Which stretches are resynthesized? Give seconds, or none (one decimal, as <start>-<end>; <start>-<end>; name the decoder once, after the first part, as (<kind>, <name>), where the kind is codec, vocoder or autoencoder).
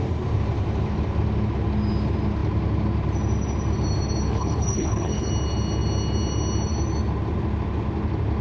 4.3-5.3 (codec, HILCodec)